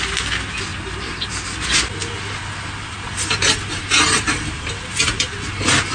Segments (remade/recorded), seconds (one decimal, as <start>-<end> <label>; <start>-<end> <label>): 0.0-0.7 recorded; 0.7-1.3 remade; 1.3-5.9 recorded